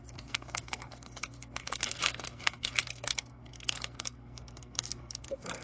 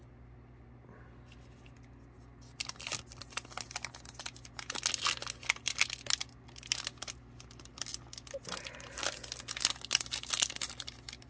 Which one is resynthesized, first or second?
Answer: first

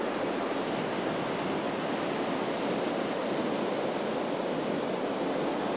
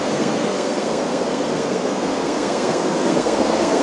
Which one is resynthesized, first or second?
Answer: second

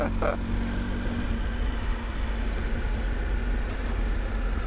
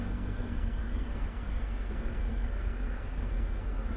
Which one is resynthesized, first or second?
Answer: second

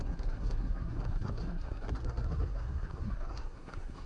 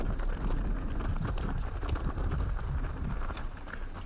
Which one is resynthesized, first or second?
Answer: first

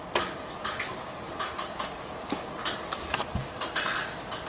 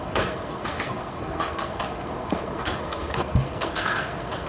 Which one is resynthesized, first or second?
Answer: second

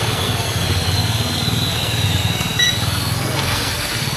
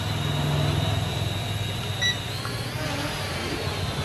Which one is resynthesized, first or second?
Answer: first